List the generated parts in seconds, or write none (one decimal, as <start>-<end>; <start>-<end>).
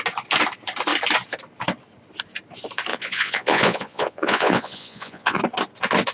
2.9-5.4